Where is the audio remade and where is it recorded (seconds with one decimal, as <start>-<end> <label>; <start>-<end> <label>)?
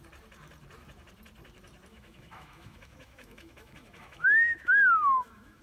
0.0-1.9 recorded; 1.9-5.6 remade